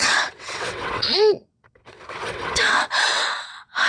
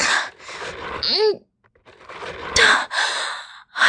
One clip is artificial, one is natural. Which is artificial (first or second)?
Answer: first